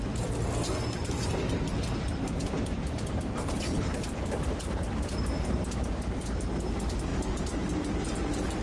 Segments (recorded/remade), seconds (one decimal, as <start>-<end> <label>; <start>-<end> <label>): 0.0-1.7 recorded; 1.7-6.2 remade; 6.2-7.1 recorded; 7.1-7.8 remade; 7.8-8.6 recorded